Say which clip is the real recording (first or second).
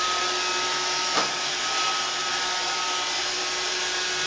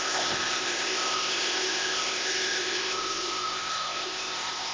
first